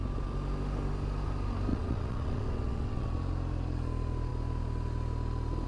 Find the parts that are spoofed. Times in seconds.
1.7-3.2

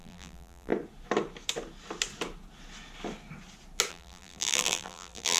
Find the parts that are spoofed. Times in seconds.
0.0-0.7; 3.9-5.4

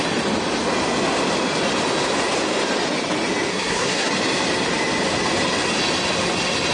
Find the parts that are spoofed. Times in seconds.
3.5-4.1

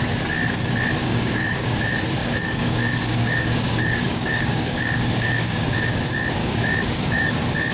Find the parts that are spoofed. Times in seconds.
1.0-1.8; 2.2-6.0; 6.4-7.3